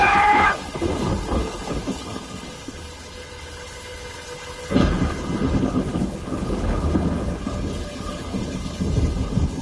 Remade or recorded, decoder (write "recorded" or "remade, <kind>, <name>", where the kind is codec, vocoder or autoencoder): remade, codec, HILCodec